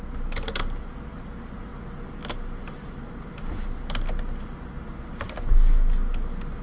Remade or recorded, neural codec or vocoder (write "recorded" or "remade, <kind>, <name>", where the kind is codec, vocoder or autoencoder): recorded